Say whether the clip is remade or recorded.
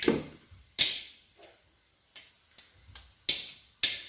recorded